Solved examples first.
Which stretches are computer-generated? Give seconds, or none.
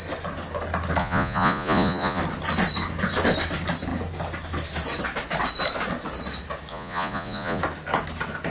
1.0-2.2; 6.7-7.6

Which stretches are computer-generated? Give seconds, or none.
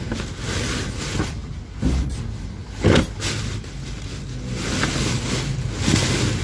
none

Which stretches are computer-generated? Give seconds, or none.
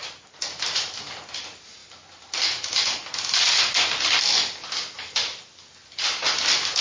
none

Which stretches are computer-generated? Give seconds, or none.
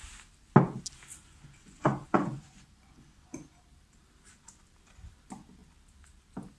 1.1-3.6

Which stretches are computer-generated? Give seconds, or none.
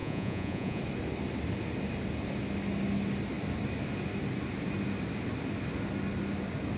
0.0-0.8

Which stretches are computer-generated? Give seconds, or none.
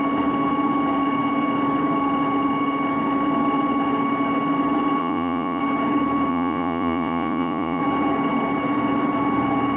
5.0-5.6; 6.3-7.8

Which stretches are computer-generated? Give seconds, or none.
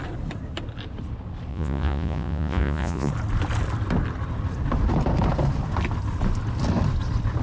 1.5-3.1